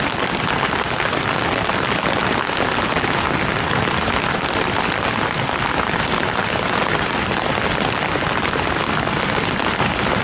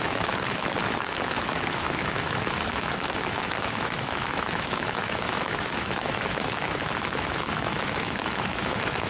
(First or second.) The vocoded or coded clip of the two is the second